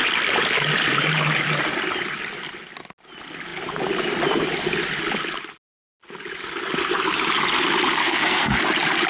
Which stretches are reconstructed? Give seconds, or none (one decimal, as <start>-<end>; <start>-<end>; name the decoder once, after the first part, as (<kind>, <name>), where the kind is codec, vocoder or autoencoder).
8.0-8.5 (codec, SNAC)